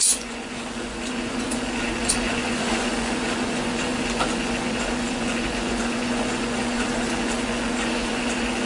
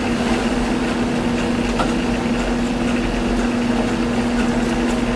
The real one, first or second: second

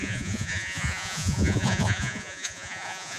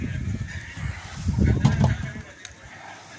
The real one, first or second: second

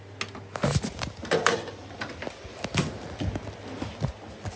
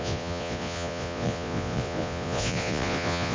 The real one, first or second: first